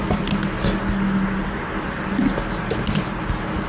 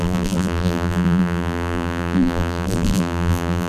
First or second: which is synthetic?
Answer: second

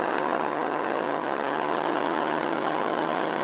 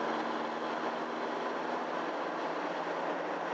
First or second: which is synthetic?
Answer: first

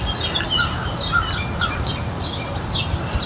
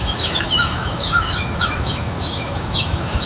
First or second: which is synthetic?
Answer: second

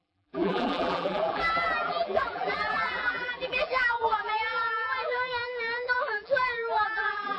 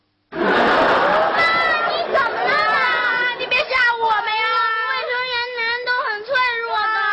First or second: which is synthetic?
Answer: first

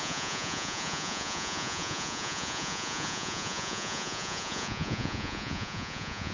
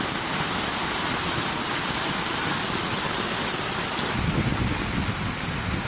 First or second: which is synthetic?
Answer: first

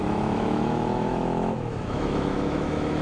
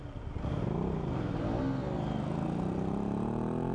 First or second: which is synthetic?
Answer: first